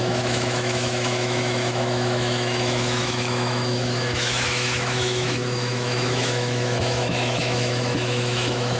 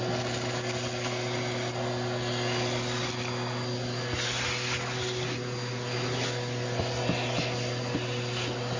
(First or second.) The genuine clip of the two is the second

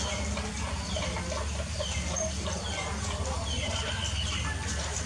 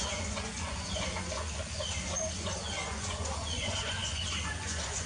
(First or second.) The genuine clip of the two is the first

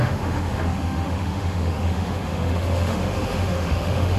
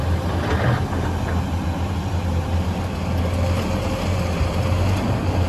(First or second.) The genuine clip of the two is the second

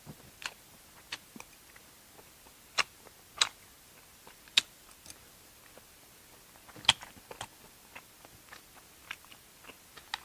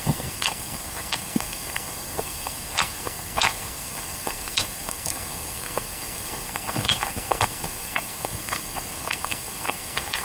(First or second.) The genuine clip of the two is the first